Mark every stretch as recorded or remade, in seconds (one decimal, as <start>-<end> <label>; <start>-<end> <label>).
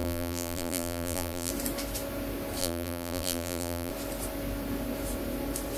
0.0-1.5 remade; 1.5-2.6 recorded; 2.6-3.9 remade; 3.9-5.8 recorded